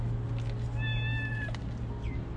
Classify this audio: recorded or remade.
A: recorded